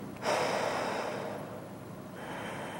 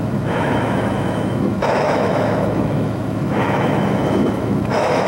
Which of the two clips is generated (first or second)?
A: second